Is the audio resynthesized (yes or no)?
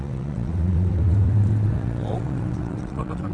yes